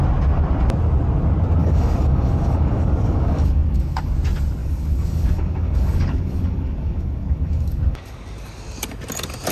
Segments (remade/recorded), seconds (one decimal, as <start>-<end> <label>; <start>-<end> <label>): 0.0-1.6 recorded; 1.6-4.1 remade; 4.1-4.6 recorded; 4.6-8.8 remade; 8.8-9.5 recorded